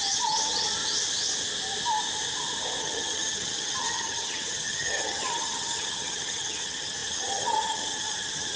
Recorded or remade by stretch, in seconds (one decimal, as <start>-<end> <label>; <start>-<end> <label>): 0.0-0.8 remade; 0.8-2.8 recorded; 2.8-8.6 remade